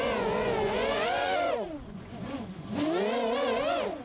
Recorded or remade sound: remade